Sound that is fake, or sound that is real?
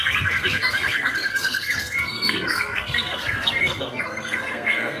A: fake